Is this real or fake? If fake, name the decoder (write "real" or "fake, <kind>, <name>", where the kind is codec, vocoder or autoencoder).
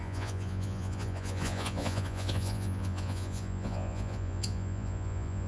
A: fake, vocoder, Vocos